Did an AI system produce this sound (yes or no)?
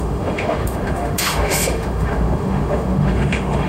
yes